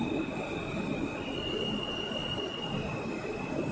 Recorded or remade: recorded